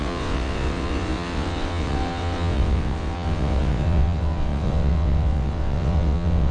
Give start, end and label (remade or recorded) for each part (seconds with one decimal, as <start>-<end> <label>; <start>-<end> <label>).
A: 0.0-6.5 remade